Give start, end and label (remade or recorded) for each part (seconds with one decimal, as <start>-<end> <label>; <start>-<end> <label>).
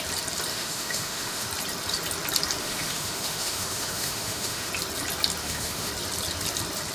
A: 0.0-0.5 recorded; 0.5-1.5 remade; 1.5-2.6 recorded; 2.6-4.7 remade; 4.7-5.4 recorded; 5.4-5.9 remade; 5.9-6.9 recorded